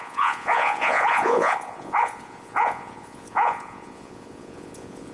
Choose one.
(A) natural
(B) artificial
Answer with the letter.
B